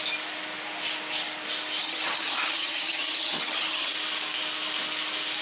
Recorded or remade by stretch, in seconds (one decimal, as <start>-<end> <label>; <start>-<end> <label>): 0.0-1.8 recorded; 1.8-3.9 remade; 3.9-5.4 recorded